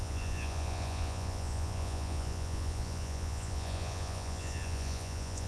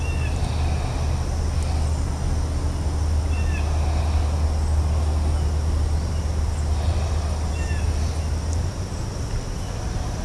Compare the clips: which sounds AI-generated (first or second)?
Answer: first